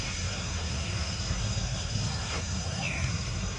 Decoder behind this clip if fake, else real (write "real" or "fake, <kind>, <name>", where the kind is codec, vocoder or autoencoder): fake, codec, SNAC